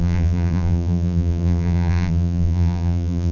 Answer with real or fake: fake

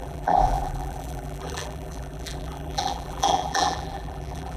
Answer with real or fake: fake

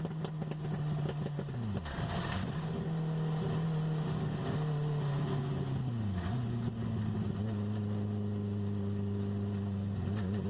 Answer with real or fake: real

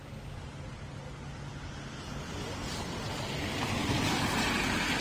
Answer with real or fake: real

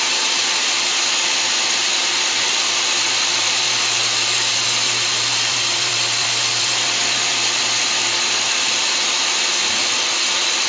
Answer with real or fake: fake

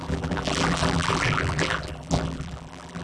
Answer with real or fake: fake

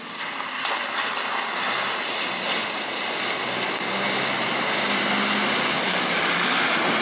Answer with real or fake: real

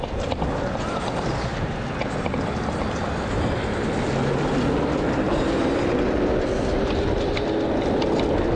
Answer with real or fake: real